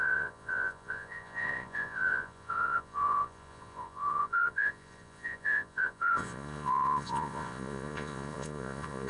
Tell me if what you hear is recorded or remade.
remade